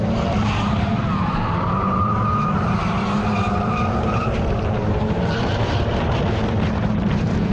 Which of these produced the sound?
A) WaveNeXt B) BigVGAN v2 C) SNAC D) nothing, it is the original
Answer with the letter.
B